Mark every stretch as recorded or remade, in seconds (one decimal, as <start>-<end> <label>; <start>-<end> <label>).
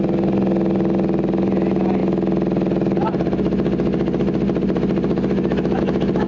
0.0-6.3 recorded